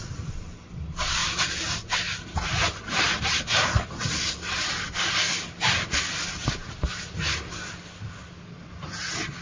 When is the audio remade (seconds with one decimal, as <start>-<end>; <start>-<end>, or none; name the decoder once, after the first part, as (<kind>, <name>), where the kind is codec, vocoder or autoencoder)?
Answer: none